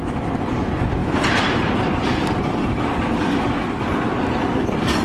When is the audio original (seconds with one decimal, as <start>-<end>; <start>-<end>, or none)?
0.0-1.0; 2.4-5.0

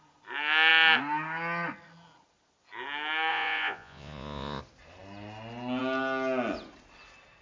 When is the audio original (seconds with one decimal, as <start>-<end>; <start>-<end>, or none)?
0.0-3.3; 4.6-7.4

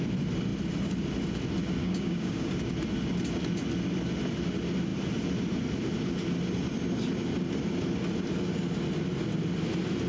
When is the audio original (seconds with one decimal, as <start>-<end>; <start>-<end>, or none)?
0.0-1.8; 2.5-10.1

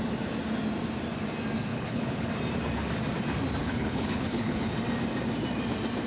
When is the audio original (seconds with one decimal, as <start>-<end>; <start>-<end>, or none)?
0.0-1.7; 2.3-3.6; 4.6-6.1

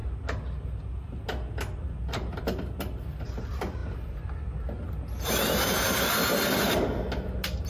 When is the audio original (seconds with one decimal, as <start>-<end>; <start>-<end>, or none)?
0.0-7.7

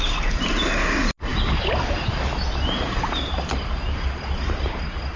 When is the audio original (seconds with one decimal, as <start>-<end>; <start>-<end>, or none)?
0.0-5.2